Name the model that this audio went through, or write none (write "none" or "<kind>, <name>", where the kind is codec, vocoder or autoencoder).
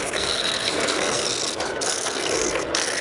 codec, SNAC